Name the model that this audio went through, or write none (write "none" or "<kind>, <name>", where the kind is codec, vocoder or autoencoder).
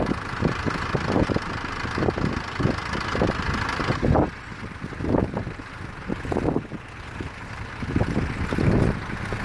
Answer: none